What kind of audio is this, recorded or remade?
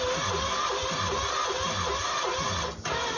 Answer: recorded